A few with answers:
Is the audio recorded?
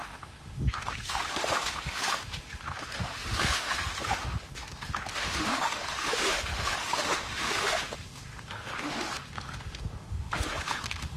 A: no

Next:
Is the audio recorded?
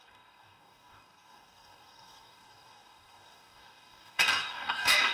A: no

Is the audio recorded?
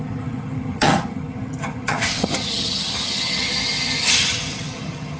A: no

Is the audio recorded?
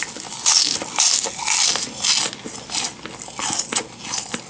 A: yes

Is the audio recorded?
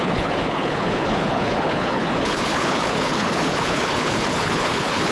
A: no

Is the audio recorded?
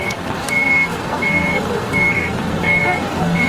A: no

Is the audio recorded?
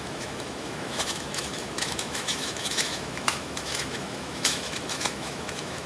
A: no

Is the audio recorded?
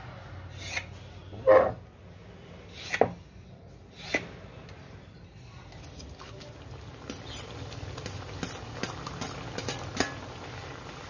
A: yes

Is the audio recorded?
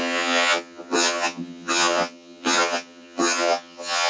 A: no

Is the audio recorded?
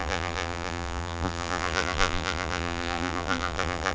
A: no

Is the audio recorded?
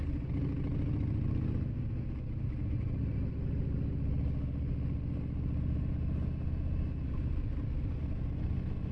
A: yes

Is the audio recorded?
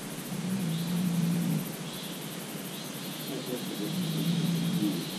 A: yes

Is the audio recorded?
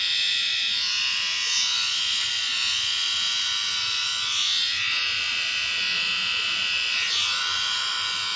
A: no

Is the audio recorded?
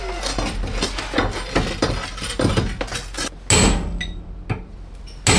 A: yes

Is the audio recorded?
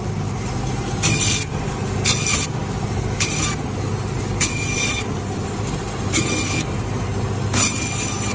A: yes